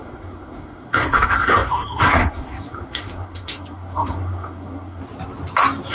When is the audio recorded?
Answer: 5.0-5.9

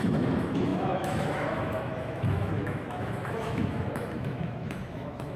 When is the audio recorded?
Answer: none

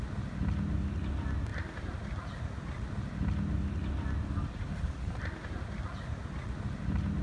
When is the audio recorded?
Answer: 0.0-7.2

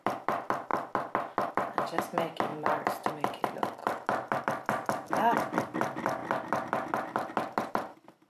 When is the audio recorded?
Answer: 0.7-1.5; 6.2-7.7